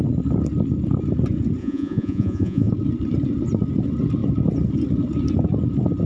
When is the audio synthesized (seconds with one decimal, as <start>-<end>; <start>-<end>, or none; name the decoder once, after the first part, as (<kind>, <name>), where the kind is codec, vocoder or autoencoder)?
1.6-2.7 (vocoder, Vocos)